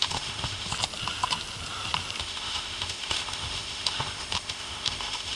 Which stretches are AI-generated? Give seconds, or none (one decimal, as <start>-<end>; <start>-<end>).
0.0-0.7; 2.2-5.4